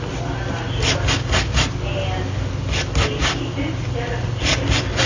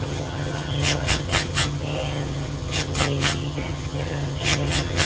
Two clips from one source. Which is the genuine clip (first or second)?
first